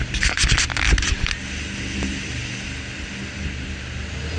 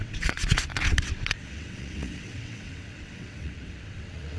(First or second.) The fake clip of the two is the second